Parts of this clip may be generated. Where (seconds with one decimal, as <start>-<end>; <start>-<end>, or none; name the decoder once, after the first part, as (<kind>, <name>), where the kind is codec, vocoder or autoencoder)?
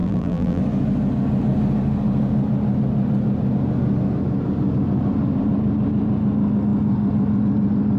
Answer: 0.0-0.6 (vocoder, BigVGAN v2)